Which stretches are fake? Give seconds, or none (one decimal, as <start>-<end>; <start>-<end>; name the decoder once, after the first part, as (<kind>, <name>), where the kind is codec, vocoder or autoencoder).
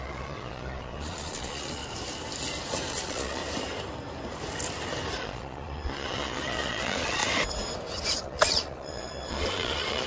0.0-1.8 (vocoder, Vocos); 2.9-3.4; 5.2-7.2; 8.2-10.1